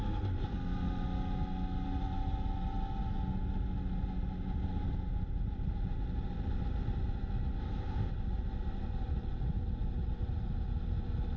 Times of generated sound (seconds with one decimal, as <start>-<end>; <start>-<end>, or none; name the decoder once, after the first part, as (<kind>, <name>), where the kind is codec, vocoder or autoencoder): 7.6-8.1 (codec, ZipCodec)